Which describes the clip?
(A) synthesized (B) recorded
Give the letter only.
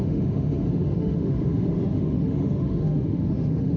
A